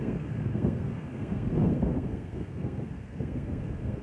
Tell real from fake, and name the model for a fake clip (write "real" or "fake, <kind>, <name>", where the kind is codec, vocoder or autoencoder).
fake, codec, SNAC